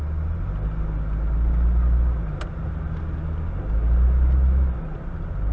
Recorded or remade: recorded